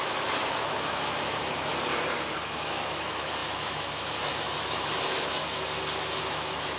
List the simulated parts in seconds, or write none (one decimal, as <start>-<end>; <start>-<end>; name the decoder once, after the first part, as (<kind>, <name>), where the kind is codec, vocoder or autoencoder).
0.0-1.7 (autoencoder, DAC-VAE); 2.3-5.4; 6.2-6.8